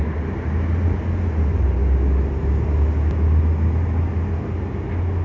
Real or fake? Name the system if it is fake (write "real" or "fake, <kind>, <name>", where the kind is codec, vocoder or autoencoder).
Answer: real